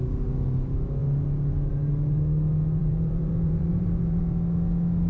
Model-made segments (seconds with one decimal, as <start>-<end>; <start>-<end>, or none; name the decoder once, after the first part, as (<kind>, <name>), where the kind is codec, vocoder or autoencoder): 2.8-4.2 (vocoder, BigVGAN v2)